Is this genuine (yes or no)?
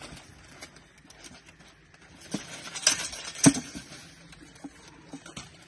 yes